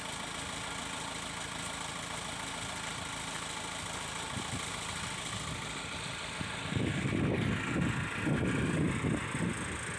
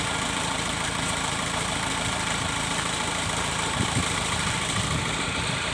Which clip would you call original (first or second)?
first